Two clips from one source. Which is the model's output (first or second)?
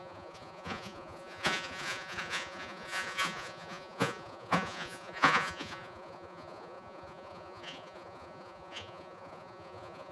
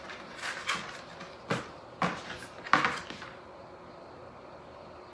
first